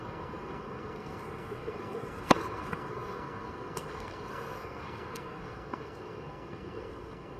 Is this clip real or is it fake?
fake